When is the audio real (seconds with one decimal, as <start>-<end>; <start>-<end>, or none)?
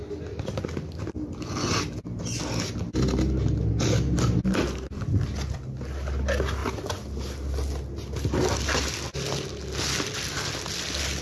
0.0-11.2